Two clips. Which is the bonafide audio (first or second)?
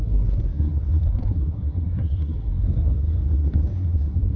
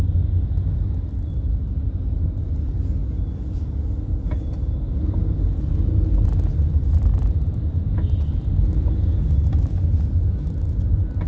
second